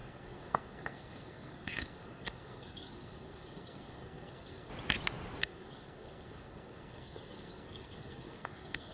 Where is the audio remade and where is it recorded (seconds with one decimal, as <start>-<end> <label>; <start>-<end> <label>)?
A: 0.0-4.7 remade; 4.7-5.4 recorded; 5.4-8.9 remade